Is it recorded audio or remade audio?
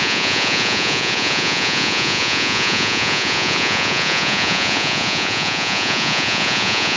remade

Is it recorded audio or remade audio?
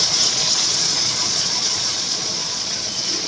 remade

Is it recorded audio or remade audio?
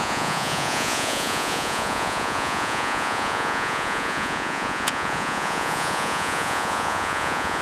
remade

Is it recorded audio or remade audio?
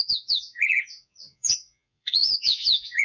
remade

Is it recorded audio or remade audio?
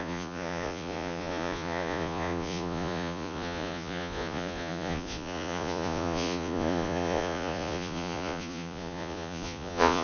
remade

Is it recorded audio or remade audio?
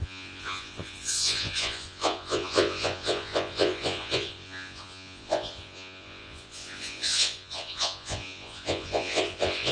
remade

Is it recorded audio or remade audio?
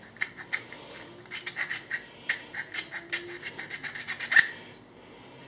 recorded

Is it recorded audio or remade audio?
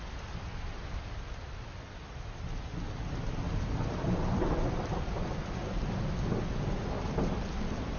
recorded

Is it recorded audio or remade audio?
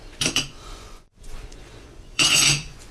remade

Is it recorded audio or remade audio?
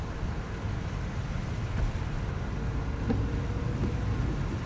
recorded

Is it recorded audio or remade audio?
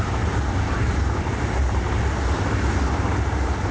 recorded